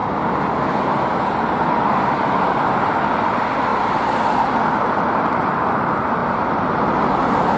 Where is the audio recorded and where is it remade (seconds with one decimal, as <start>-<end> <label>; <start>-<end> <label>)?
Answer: 0.0-7.6 recorded